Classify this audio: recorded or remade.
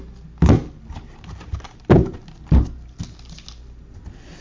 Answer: recorded